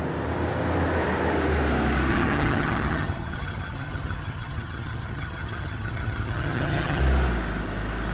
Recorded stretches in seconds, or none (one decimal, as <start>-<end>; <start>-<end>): 0.0-2.1; 7.0-8.1

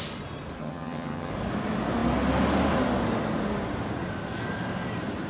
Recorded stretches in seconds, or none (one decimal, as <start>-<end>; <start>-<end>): 0.0-0.6; 1.3-5.3

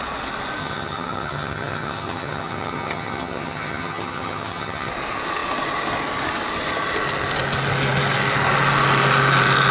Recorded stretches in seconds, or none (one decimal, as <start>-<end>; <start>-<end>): 0.0-0.6; 4.9-9.7

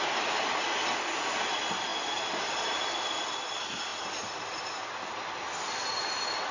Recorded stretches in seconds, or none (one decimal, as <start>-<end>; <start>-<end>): 0.0-6.5